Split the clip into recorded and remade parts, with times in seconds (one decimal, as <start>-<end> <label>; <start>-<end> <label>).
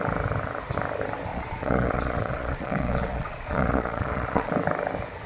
0.0-1.3 recorded; 1.3-4.5 remade; 4.5-5.3 recorded